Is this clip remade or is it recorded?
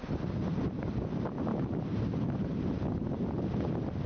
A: recorded